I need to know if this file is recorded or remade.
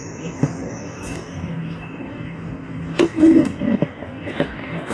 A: remade